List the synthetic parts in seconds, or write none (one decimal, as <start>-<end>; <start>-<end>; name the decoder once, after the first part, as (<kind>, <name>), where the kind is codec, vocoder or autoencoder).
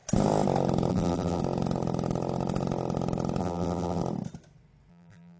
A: 0.9-1.4 (vocoder, BigVGAN v2); 3.4-4.0; 4.9-5.4